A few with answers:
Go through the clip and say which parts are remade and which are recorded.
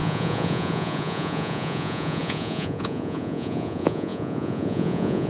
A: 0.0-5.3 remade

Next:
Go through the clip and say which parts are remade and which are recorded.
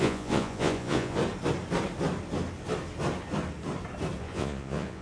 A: 0.0-1.2 remade; 1.2-4.2 recorded; 4.2-5.0 remade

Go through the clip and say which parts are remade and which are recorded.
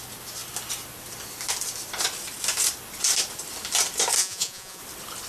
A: 0.0-4.2 recorded; 4.2-4.8 remade; 4.8-5.3 recorded